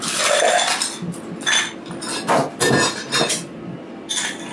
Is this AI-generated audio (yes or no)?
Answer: no